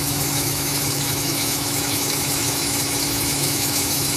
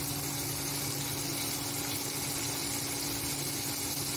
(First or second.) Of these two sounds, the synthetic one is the first